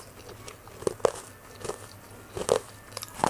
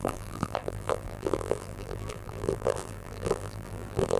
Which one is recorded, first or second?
first